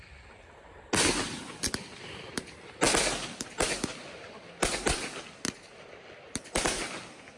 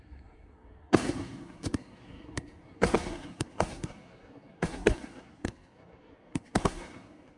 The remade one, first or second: second